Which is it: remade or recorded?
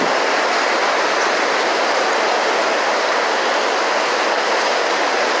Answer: recorded